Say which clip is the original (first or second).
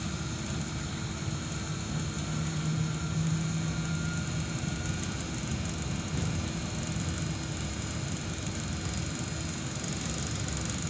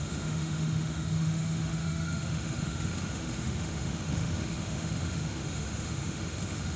first